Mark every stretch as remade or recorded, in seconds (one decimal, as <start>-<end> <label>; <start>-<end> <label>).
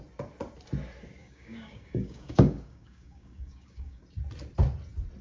0.0-1.2 recorded; 1.2-4.0 remade; 4.0-5.2 recorded